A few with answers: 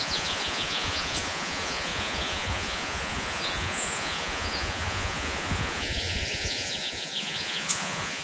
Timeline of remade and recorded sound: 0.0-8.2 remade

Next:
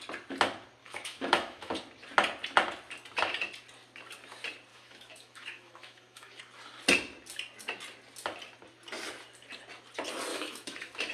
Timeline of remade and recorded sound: 0.0-0.8 recorded; 0.8-1.7 remade; 1.7-4.7 recorded; 4.7-6.4 remade; 6.4-10.3 recorded; 10.3-11.1 remade

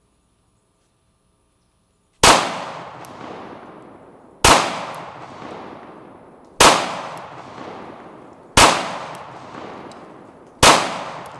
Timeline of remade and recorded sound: 0.0-11.4 recorded

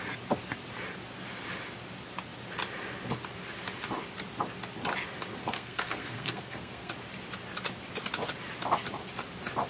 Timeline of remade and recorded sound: 0.0-5.4 recorded; 5.4-6.9 remade; 6.9-9.7 recorded

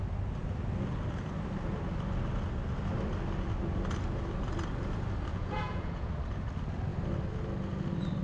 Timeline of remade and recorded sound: 0.0-5.3 recorded; 5.3-6.1 remade; 6.1-8.2 recorded

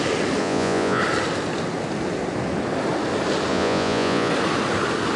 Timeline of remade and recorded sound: 0.0-0.4 recorded; 0.4-1.0 remade; 1.0-3.5 recorded; 3.5-4.3 remade; 4.3-5.2 recorded

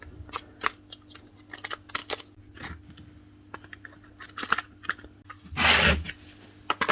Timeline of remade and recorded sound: 0.0-6.9 recorded

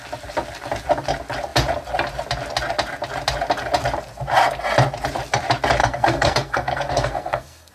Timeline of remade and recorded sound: 0.0-5.8 recorded; 5.8-7.7 remade